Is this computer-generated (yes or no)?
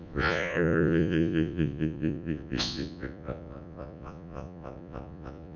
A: yes